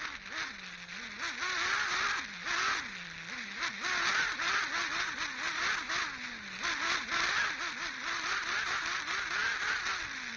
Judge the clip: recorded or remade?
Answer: recorded